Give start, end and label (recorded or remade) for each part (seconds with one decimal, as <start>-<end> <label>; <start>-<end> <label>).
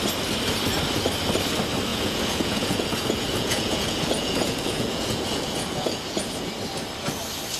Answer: 0.0-1.9 recorded; 1.9-6.5 remade; 6.5-7.6 recorded